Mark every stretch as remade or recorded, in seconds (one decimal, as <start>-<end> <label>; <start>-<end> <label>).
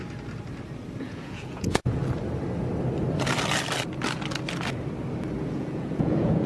0.0-1.0 recorded; 1.0-2.0 remade; 2.0-5.5 recorded; 5.5-6.5 remade